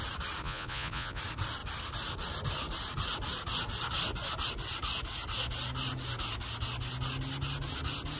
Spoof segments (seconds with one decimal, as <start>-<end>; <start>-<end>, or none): 0.4-1.2